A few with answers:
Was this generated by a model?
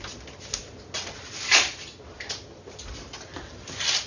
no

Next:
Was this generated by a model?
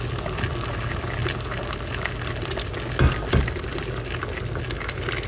no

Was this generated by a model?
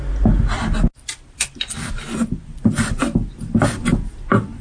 no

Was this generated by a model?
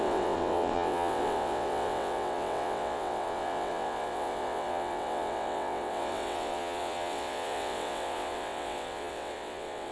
yes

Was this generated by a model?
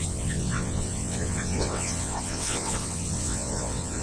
yes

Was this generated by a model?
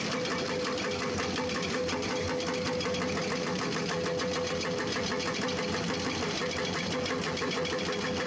no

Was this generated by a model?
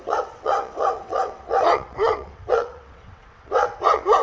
yes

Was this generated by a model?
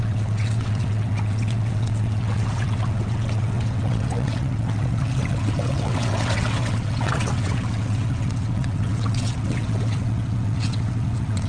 yes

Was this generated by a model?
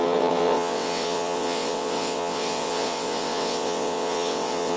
yes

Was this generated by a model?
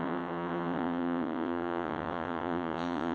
yes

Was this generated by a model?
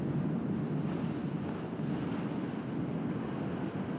no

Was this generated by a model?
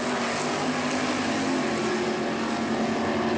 no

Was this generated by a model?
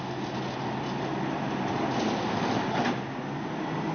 no